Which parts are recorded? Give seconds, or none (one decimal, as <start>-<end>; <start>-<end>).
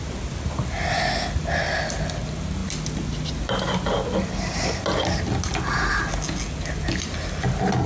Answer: 0.0-7.9